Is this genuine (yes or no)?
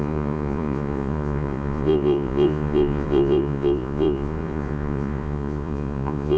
no